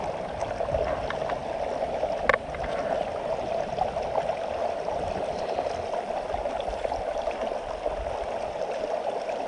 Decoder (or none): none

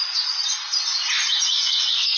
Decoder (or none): none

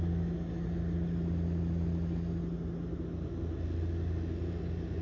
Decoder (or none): none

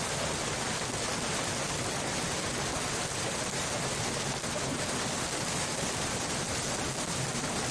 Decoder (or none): none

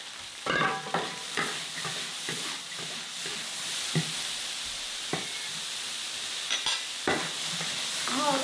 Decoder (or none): vocoder, BigVGAN v2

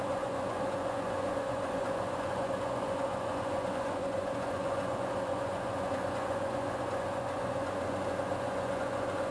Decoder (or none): vocoder, Vocos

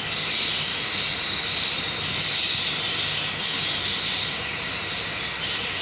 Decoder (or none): none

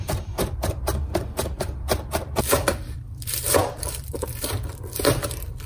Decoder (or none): vocoder, BigVGAN v2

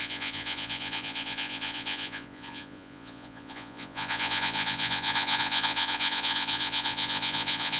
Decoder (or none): vocoder, Vocos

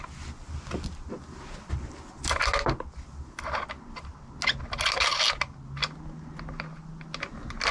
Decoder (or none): none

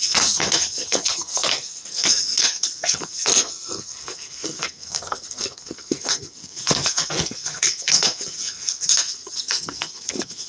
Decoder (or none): codec, SNAC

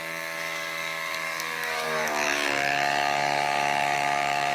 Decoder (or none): codec, DAC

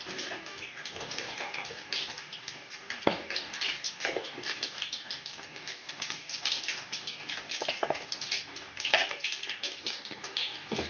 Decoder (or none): codec, DAC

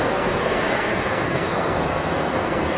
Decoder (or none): codec, SNAC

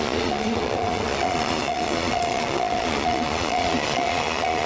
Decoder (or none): vocoder, Vocos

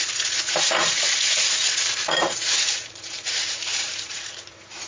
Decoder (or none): vocoder, Vocos